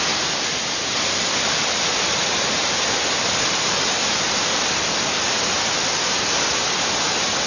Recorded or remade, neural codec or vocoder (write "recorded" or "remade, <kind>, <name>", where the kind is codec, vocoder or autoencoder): recorded